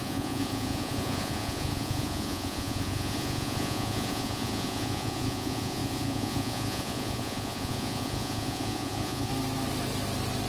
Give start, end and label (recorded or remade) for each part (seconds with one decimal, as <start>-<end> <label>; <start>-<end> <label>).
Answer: 0.0-9.3 remade; 9.3-10.5 recorded